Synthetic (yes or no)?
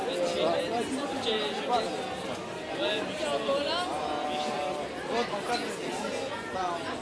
no